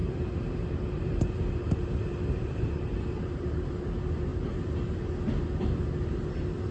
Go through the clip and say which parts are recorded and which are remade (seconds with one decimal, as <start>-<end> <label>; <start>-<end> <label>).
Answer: 0.0-3.7 remade; 3.7-4.3 recorded; 4.3-5.0 remade; 5.0-6.7 recorded